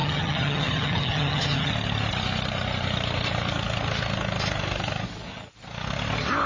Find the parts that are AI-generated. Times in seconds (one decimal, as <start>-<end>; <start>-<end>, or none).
0.0-1.7